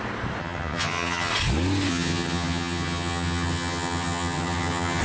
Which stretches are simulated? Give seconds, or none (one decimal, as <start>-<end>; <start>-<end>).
0.4-1.3; 1.9-5.0